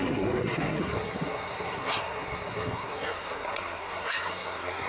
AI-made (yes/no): yes